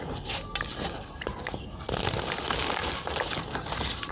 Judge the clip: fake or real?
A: real